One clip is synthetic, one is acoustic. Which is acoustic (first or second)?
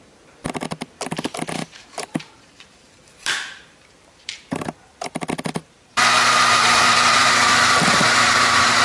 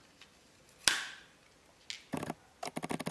second